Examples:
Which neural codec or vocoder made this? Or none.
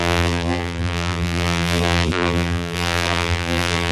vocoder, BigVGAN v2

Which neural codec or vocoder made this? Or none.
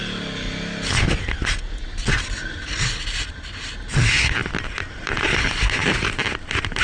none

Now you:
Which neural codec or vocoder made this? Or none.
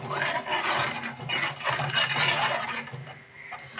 none